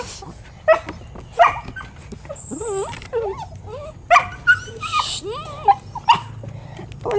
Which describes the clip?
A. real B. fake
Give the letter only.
A